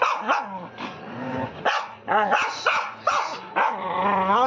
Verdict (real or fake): fake